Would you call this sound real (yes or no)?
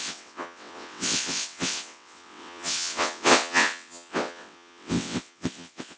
no